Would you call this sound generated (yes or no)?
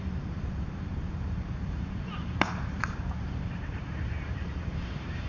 yes